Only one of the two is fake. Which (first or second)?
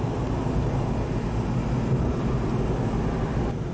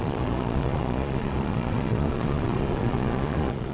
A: second